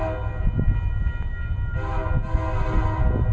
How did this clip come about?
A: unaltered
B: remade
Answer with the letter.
A